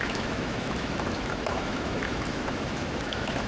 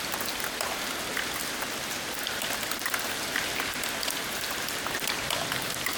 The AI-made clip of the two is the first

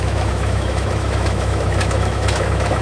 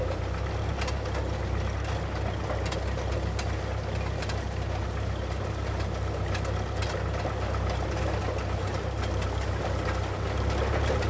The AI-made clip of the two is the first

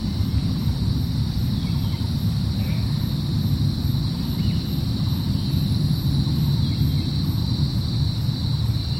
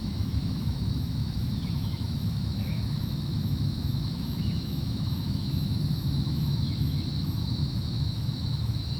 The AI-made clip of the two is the second